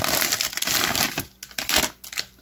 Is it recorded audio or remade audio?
recorded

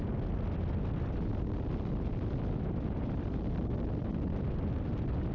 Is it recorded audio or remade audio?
recorded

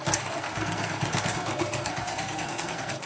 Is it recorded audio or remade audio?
remade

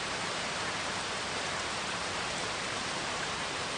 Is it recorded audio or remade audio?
remade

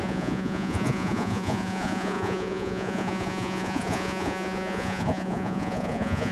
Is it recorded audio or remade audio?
remade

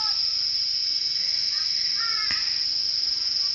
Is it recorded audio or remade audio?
recorded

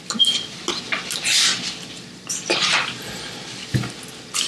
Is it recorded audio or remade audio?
recorded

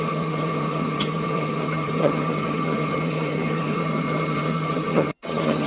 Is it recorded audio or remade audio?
remade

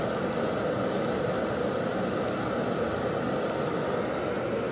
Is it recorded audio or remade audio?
recorded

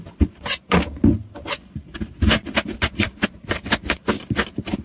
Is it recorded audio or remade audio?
recorded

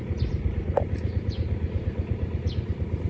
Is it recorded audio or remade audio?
recorded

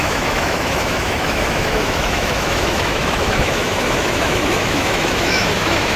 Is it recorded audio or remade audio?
remade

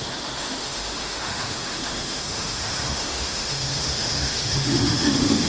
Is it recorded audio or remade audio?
remade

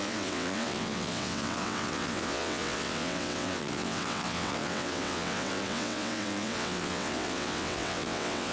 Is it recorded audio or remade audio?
remade